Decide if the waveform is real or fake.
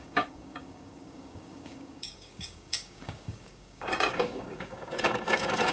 fake